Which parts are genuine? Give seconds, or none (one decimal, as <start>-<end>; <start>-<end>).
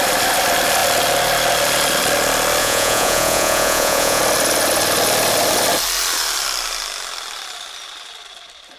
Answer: 0.0-2.6; 4.2-8.8